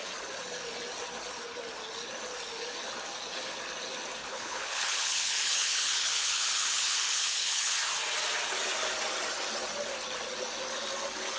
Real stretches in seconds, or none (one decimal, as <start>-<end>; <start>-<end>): 0.0-4.2; 7.7-11.4